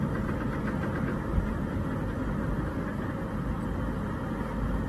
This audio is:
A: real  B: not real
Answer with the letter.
A